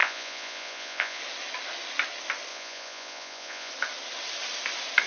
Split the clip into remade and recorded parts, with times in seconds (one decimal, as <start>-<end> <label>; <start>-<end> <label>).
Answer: 0.0-1.2 remade; 1.2-2.5 recorded; 2.5-3.7 remade; 3.7-5.1 recorded

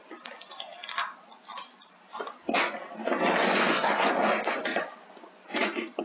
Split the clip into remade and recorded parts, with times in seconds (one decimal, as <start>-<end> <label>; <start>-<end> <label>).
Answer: 0.0-2.1 recorded; 2.1-2.7 remade; 2.7-3.4 recorded; 3.4-4.1 remade; 4.1-4.7 recorded; 4.7-6.0 remade

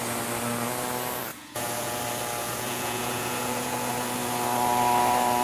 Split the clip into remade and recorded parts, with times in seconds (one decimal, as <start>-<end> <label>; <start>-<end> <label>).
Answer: 0.0-1.3 recorded; 1.3-2.0 remade; 2.0-2.4 recorded; 2.4-3.9 remade; 3.9-5.4 recorded

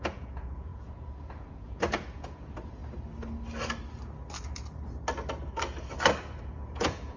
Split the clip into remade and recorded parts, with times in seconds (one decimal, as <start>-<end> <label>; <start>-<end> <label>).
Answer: 0.0-2.8 remade; 2.8-6.4 recorded; 6.4-7.2 remade

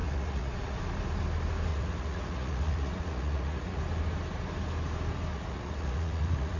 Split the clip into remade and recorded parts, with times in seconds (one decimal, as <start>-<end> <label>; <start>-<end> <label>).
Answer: 0.0-0.8 remade; 0.8-1.7 recorded; 1.7-3.8 remade; 3.8-5.3 recorded; 5.3-6.6 remade

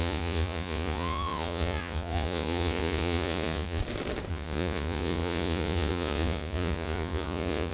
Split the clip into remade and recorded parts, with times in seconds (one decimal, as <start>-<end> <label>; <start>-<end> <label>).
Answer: 0.0-3.8 remade; 3.8-4.3 recorded; 4.3-7.7 remade